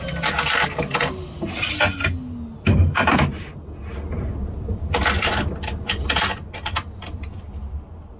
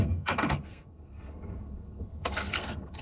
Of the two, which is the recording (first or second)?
first